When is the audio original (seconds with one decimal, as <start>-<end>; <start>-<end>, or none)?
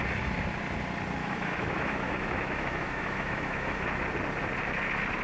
0.0-1.2; 3.9-5.2